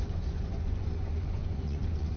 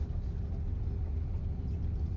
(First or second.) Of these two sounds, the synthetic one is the first